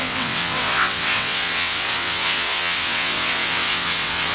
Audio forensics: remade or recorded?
remade